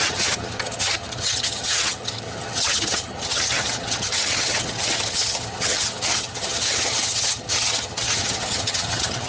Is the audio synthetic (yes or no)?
yes